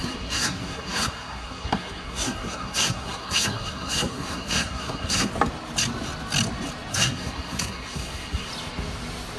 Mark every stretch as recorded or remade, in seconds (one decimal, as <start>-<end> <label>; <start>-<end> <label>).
0.0-5.3 remade; 5.3-6.9 recorded; 6.9-8.5 remade; 8.5-9.4 recorded